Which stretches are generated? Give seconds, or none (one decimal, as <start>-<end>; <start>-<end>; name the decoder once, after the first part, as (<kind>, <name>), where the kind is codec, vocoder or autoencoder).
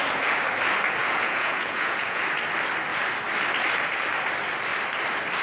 1.0-2.2 (vocoder, Vocos)